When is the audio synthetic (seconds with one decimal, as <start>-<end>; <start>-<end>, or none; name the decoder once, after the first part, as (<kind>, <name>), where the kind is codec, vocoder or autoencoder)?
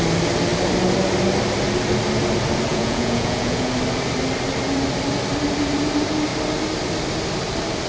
2.7-3.7 (vocoder, Vocos)